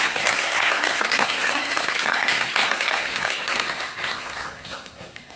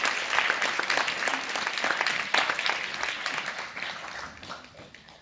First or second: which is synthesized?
first